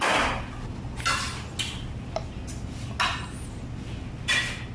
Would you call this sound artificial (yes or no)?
no